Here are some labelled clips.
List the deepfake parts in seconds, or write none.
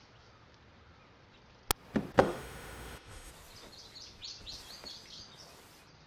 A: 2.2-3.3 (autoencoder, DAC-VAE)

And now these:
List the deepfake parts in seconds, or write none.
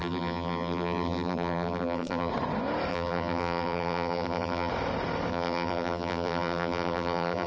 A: 0.0-2.3 (vocoder, BigVGAN v2); 2.9-4.7; 5.3-7.5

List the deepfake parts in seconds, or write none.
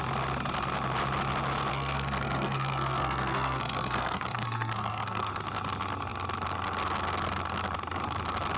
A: 1.7-5.3 (codec, SNAC)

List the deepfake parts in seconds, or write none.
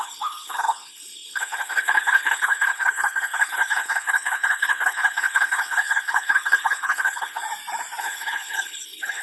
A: 0.0-7.4 (codec, HILCodec); 8.0-9.2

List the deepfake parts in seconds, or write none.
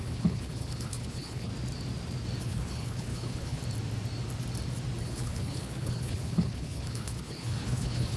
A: 0.0-1.5 (codec, HILCodec); 2.4-3.6; 5.0-8.2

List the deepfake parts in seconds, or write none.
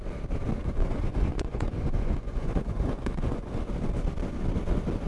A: 0.6-3.6 (vocoder, Vocos)